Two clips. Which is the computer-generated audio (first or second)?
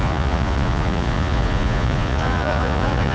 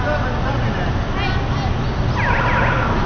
first